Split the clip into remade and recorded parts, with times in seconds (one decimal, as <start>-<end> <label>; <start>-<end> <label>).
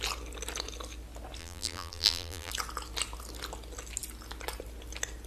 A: 0.0-1.4 recorded; 1.4-2.5 remade; 2.5-5.3 recorded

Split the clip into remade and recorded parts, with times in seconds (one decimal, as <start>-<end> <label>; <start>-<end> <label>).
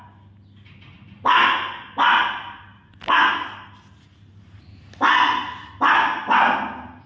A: 0.0-7.1 recorded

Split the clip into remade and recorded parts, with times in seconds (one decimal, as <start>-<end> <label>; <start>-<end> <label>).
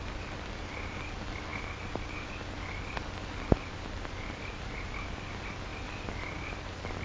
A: 0.0-7.0 recorded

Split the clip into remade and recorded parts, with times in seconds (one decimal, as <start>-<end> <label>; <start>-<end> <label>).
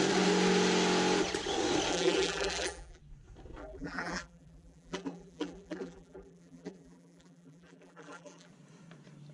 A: 0.0-1.9 recorded; 1.9-3.0 remade; 3.0-3.6 recorded; 3.6-8.5 remade; 8.5-9.3 recorded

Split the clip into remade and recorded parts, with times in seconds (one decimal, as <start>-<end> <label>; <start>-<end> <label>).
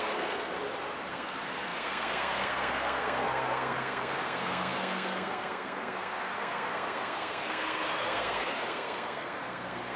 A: 0.0-0.5 remade; 0.5-1.1 recorded; 1.1-10.0 remade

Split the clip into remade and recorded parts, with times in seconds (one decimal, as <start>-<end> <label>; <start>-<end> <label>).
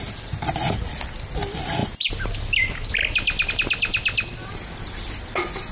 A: 0.0-5.7 recorded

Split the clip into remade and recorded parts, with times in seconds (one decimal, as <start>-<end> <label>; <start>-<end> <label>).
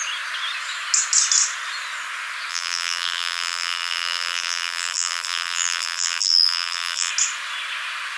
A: 0.0-2.5 recorded; 2.5-7.1 remade; 7.1-8.2 recorded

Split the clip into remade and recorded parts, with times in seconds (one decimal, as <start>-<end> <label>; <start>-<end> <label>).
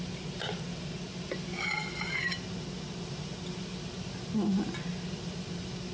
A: 0.0-5.9 recorded